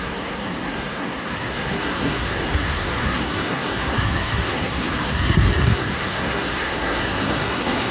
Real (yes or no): no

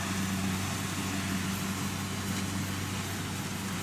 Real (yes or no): yes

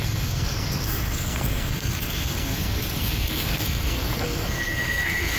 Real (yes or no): no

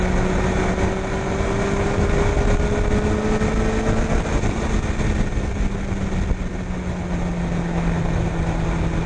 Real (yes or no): yes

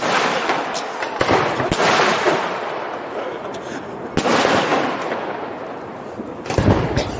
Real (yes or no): yes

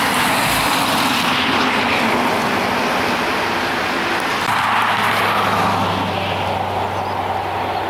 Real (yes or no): yes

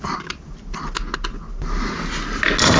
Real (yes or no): yes